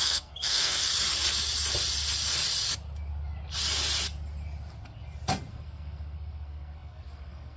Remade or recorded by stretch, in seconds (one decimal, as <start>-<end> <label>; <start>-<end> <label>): 0.0-0.9 remade; 0.9-5.5 recorded; 5.5-7.6 remade